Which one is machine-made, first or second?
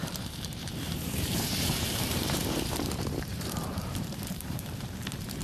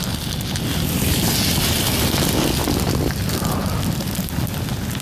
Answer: first